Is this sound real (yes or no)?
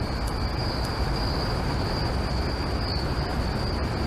yes